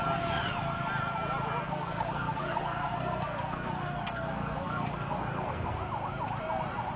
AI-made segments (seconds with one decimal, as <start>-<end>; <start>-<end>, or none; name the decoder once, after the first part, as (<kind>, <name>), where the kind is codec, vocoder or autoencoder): 1.6-5.8 (codec, SNAC)